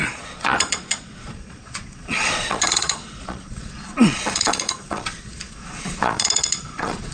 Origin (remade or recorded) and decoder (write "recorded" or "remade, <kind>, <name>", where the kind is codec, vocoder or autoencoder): remade, vocoder, Vocos